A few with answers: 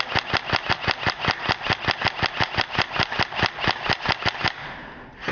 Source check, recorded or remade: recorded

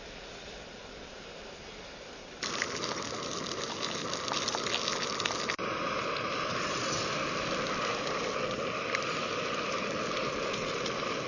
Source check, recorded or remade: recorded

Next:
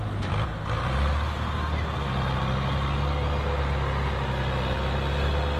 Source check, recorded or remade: recorded